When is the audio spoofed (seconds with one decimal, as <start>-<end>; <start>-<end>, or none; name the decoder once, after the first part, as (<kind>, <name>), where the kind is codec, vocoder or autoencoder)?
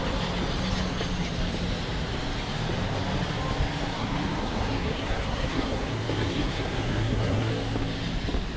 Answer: 3.9-7.5 (codec, SNAC)